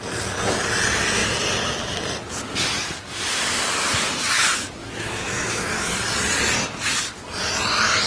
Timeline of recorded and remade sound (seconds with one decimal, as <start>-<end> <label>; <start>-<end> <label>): 0.0-4.8 recorded; 4.8-6.0 remade; 6.0-8.1 recorded